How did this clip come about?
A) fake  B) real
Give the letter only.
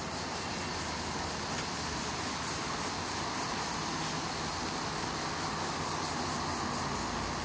B